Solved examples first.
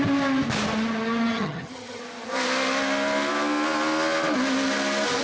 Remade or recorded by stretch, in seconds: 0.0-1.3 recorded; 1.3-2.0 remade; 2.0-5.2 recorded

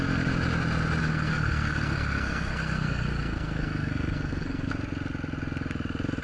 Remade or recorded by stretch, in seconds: 0.0-1.0 recorded; 1.0-4.7 remade; 4.7-6.2 recorded

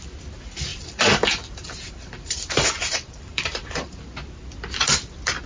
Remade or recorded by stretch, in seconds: 0.0-0.7 recorded; 0.7-4.0 remade; 4.0-5.5 recorded